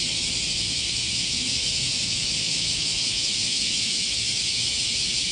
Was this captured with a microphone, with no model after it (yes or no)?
no